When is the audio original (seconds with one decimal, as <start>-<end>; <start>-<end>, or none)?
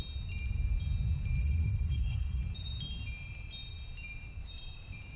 0.0-1.4; 2.4-5.2